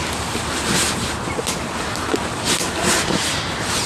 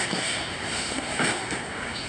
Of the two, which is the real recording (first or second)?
first